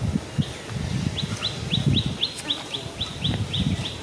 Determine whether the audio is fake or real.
real